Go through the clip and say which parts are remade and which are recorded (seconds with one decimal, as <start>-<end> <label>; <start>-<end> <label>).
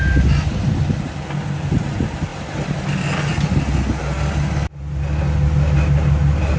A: 0.0-6.6 recorded